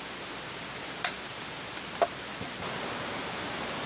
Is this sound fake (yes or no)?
no